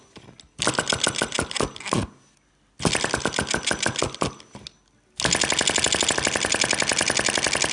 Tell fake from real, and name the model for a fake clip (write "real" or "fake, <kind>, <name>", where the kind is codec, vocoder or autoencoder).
real